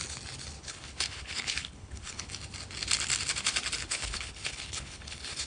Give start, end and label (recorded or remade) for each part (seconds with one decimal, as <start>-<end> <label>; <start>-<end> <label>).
0.0-0.6 recorded; 0.6-2.3 remade; 2.3-3.8 recorded; 3.8-5.5 remade